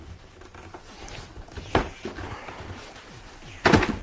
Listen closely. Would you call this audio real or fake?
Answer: real